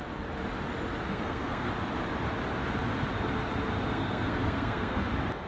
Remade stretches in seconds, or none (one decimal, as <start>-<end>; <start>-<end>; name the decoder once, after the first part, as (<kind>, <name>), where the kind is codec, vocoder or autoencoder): 1.1-1.7 (codec, SNAC); 3.9-5.0